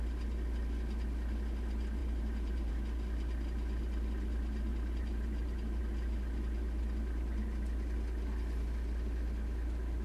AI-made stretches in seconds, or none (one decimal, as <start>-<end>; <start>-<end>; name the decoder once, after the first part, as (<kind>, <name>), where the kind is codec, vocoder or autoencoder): 2.0-2.7 (vocoder, BigVGAN v2); 4.7-5.8